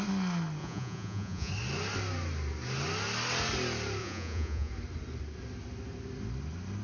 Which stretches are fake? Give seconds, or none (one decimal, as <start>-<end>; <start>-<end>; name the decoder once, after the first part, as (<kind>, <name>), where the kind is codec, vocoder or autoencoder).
0.6-1.5 (vocoder, Vocos); 4.0-4.7